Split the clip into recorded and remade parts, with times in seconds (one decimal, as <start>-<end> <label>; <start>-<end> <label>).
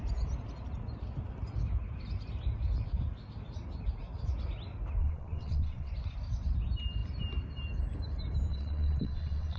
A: 0.0-5.0 recorded; 5.0-5.9 remade; 5.9-8.5 recorded; 8.5-9.6 remade